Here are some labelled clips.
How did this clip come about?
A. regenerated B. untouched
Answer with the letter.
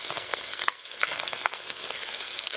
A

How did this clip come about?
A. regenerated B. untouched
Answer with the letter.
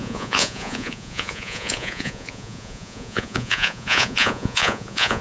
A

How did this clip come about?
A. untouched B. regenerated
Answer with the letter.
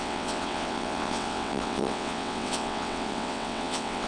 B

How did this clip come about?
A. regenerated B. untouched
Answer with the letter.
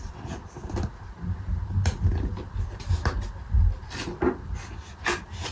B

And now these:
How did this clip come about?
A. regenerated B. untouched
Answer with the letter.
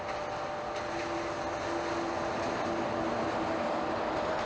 B